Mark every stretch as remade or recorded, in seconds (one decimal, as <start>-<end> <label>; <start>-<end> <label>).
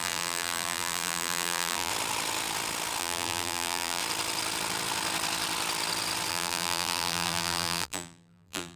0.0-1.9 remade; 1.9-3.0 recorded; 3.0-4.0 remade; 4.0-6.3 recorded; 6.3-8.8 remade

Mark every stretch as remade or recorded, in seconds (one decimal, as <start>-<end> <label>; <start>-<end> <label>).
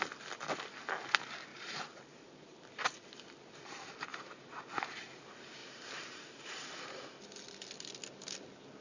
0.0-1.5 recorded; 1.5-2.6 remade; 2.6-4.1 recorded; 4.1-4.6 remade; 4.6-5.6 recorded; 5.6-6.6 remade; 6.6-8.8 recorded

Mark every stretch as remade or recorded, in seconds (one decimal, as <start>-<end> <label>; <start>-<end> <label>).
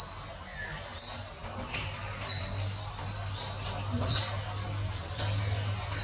0.0-1.4 recorded; 1.4-4.2 remade; 4.2-6.0 recorded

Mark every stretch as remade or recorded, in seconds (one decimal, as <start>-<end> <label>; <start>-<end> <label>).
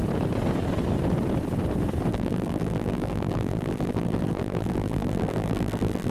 0.0-2.1 recorded; 2.1-6.1 remade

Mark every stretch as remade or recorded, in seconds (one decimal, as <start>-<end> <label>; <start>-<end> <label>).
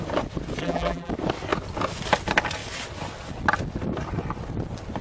0.0-0.6 recorded; 0.6-1.1 remade; 1.1-5.0 recorded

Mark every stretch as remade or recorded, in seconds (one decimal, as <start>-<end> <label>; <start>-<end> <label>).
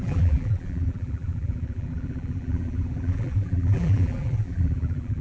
0.0-5.2 remade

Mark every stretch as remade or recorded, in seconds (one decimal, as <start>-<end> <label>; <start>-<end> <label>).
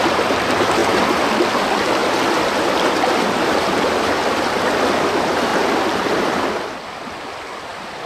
0.0-5.5 remade; 5.5-6.1 recorded; 6.1-8.1 remade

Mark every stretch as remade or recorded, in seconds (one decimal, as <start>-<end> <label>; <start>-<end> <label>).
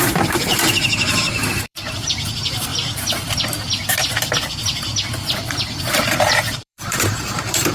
0.0-2.7 remade; 2.7-5.5 recorded; 5.5-7.7 remade